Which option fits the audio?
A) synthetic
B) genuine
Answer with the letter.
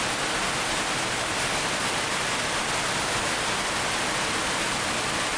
B